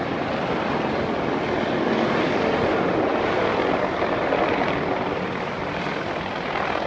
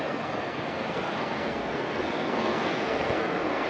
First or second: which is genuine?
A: first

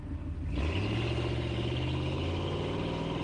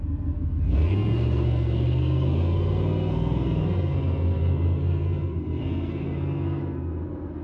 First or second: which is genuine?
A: first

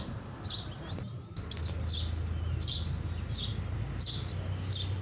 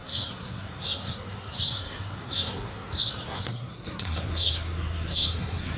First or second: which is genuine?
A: first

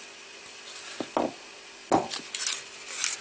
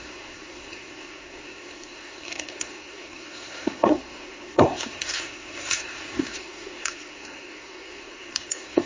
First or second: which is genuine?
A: first